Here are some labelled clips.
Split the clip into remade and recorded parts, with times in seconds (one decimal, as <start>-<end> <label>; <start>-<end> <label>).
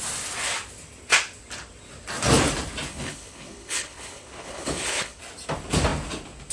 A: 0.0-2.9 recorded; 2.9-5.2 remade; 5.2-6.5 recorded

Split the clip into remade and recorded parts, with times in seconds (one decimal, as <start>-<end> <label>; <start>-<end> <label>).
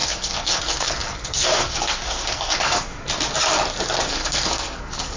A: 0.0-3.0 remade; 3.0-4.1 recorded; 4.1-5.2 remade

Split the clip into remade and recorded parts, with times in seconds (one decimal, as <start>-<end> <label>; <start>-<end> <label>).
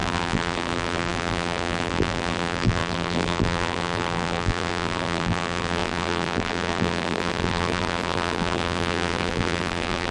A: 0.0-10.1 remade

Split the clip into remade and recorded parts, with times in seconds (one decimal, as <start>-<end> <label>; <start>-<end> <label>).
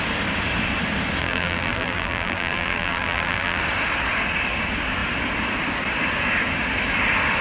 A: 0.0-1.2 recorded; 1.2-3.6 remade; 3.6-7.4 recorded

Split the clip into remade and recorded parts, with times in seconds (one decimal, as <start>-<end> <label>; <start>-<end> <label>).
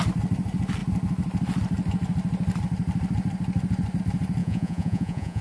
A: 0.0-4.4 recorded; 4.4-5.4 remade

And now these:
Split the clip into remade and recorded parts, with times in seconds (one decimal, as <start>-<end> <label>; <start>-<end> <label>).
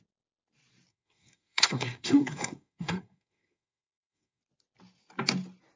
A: 0.0-0.9 recorded; 0.9-4.4 remade; 4.4-5.8 recorded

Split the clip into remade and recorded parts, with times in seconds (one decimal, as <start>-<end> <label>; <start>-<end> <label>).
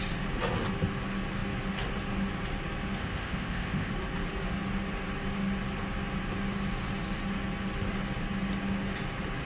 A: 0.0-3.0 recorded; 3.0-3.9 remade; 3.9-9.5 recorded